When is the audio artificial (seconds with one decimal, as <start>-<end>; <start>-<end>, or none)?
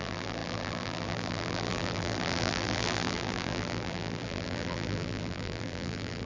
0.0-6.2